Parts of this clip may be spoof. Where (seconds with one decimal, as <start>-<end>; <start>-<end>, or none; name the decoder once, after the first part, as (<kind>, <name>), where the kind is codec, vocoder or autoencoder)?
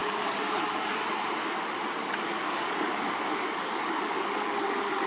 0.0-1.0 (codec, DAC); 2.0-5.1